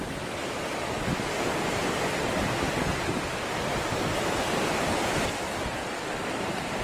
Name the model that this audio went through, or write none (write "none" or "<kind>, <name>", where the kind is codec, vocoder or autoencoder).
none